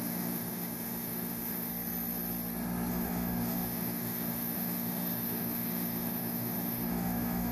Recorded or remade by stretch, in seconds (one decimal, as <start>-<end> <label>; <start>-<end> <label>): 0.0-1.7 remade; 1.7-2.9 recorded; 2.9-7.5 remade